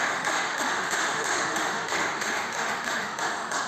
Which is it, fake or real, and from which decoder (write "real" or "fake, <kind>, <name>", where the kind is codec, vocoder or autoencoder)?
fake, autoencoder, DAC-VAE